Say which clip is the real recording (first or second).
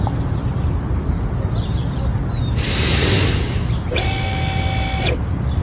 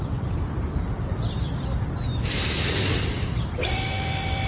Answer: first